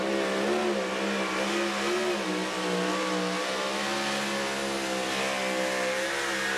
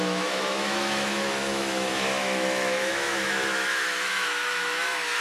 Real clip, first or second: first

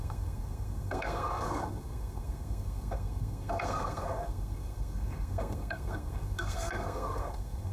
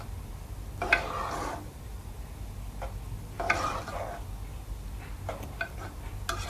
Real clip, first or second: second